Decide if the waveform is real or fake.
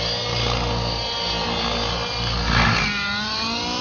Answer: real